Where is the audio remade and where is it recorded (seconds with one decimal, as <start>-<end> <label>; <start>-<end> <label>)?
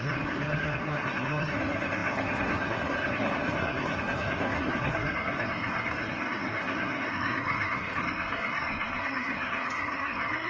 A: 0.0-10.5 remade